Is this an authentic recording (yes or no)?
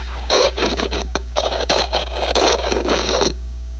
no